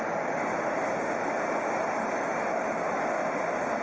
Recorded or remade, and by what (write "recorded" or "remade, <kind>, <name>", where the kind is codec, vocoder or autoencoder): recorded